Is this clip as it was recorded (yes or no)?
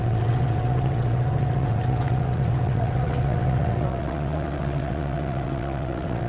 no